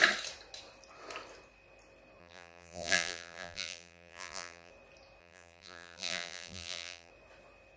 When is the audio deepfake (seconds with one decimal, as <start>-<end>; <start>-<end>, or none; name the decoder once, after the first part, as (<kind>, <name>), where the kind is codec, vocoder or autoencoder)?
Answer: 2.2-4.7 (vocoder, BigVGAN v2); 5.2-7.1